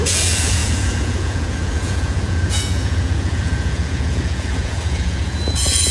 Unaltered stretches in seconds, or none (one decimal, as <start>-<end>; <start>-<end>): none